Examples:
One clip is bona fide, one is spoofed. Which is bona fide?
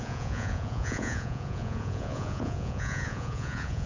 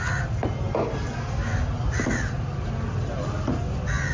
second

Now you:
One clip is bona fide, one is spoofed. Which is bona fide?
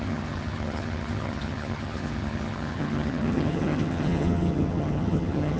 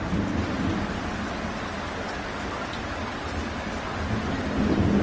second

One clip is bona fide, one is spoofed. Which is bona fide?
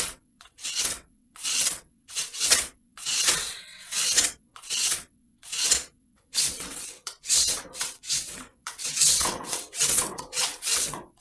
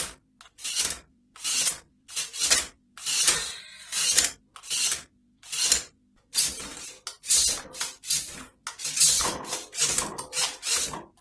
second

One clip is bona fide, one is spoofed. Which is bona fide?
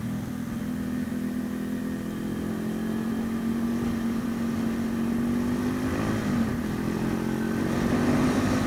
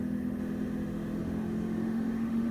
first